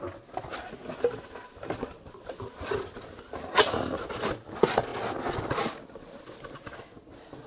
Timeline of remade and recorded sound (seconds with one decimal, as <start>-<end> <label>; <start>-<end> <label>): 0.0-7.5 recorded